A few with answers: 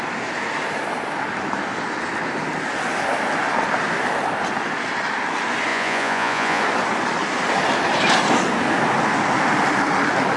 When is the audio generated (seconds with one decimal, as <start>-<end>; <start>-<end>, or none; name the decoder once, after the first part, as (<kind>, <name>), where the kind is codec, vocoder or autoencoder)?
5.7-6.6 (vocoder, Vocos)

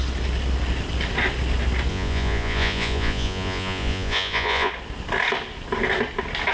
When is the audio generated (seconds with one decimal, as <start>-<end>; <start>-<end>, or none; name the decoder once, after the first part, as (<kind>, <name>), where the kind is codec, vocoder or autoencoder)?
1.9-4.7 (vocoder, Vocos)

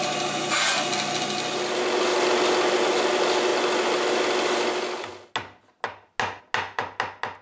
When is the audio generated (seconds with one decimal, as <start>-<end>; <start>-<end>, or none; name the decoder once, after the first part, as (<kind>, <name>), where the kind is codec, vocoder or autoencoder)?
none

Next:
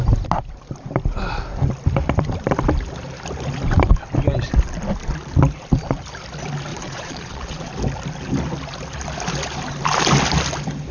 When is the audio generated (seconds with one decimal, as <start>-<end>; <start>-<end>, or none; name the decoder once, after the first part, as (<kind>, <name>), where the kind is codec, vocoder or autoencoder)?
6.7-7.7 (vocoder, Vocos)

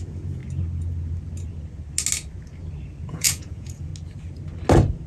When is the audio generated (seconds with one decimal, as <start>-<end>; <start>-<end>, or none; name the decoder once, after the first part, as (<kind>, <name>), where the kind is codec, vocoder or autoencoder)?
0.0-0.4 (vocoder, Vocos); 3.1-3.9

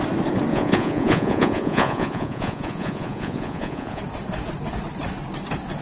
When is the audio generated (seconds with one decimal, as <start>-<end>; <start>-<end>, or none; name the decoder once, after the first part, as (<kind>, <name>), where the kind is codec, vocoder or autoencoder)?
0.5-4.0 (vocoder, Vocos)